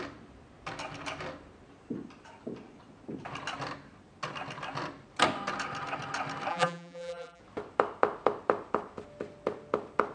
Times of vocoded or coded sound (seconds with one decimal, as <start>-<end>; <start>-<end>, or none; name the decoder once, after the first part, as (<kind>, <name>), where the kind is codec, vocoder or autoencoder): 6.5-7.4 (vocoder, BigVGAN v2)